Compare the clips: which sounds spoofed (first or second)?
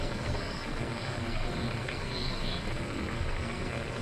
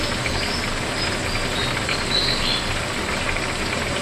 first